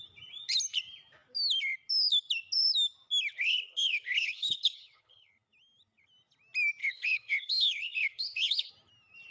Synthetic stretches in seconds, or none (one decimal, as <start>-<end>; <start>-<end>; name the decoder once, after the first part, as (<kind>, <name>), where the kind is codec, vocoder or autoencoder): 3.3-5.3 (codec, HILCodec); 6.8-8.7